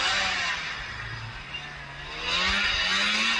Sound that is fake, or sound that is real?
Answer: real